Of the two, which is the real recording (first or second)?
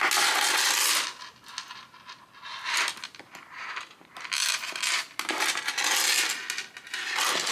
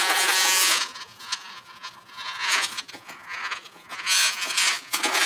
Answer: first